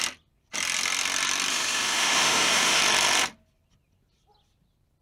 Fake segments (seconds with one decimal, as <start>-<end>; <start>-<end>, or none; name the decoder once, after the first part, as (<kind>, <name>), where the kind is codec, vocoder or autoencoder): 1.5-2.8 (autoencoder, DAC-VAE)